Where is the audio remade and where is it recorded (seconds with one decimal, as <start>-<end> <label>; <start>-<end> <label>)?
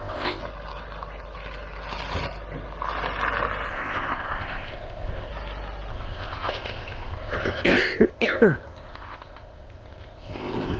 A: 0.0-0.4 remade; 0.4-3.7 recorded; 3.7-5.3 remade; 5.3-5.9 recorded; 5.9-10.8 remade